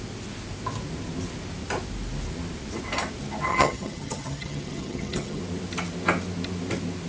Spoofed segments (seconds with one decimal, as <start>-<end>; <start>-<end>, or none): 3.5-5.4